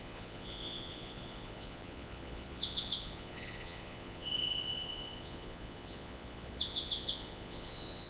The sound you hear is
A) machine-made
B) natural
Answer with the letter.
A